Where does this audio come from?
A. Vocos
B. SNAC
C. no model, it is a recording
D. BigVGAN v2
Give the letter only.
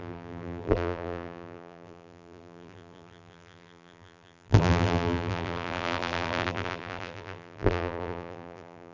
D